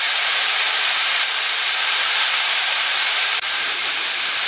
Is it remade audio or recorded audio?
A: remade